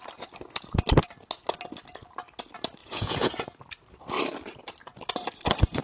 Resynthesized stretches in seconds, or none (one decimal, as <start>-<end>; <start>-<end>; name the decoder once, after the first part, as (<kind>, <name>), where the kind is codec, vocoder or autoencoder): 2.8-3.6 (vocoder, Vocos)